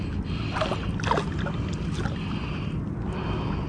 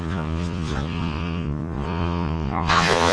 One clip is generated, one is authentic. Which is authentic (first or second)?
first